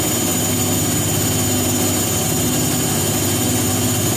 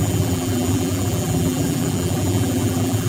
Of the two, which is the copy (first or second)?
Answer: second